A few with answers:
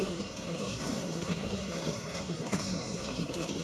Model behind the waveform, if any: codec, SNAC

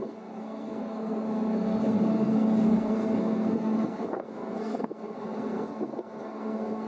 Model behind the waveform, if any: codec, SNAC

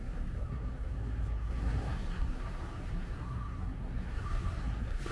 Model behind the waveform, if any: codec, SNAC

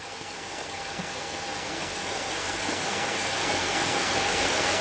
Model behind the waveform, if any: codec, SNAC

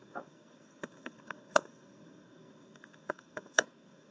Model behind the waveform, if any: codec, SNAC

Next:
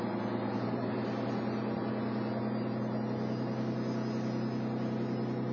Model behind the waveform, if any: none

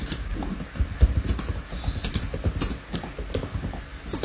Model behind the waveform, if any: none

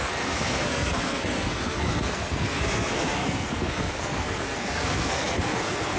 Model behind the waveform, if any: codec, SNAC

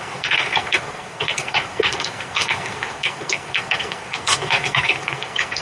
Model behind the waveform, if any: codec, SNAC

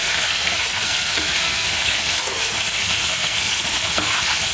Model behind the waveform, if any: codec, SNAC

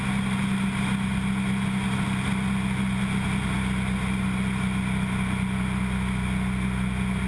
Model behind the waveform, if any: none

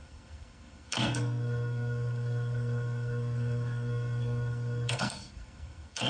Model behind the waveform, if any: codec, SNAC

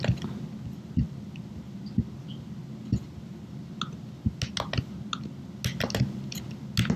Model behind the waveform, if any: none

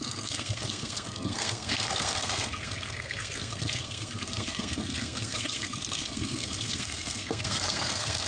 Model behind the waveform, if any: codec, SNAC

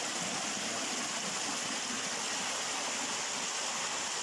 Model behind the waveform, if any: none